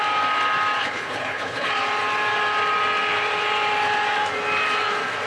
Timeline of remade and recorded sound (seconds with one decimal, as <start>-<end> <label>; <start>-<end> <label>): 0.0-0.8 recorded; 0.8-1.7 remade; 1.7-5.3 recorded